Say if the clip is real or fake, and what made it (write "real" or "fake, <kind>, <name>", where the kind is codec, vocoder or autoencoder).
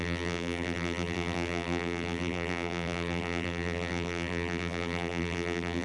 fake, vocoder, BigVGAN v2